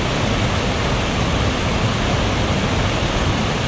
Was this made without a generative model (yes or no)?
yes